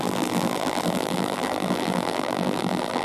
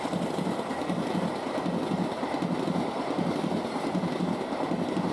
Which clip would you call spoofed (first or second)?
first